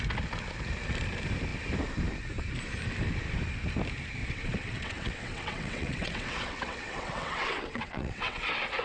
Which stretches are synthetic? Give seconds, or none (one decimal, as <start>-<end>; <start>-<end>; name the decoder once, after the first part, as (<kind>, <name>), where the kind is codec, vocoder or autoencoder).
4.2-8.4 (vocoder, WaveNeXt)